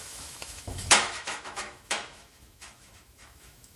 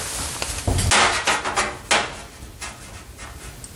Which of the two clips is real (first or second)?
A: second